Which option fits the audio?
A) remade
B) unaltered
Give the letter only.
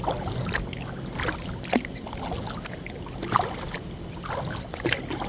B